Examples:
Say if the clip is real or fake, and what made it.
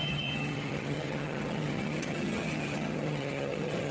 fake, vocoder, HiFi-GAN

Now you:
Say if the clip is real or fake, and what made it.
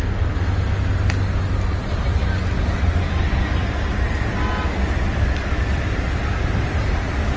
real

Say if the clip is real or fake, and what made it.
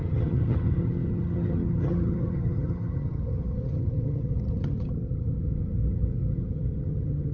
fake, vocoder, HiFi-GAN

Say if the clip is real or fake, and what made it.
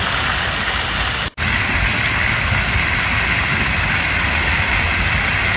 real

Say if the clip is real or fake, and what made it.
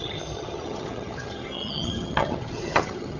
fake, vocoder, HiFi-GAN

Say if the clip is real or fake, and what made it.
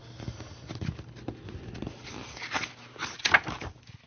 real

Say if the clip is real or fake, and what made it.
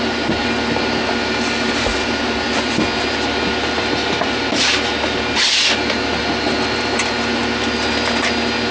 real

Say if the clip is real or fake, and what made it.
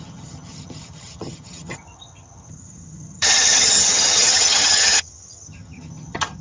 fake, vocoder, HiFi-GAN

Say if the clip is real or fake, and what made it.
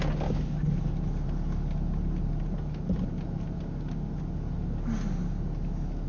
real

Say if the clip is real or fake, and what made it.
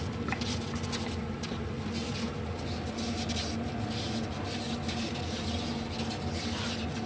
real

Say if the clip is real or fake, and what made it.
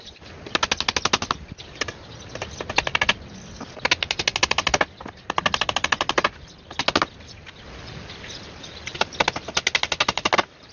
real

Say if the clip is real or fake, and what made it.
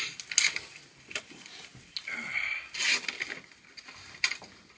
real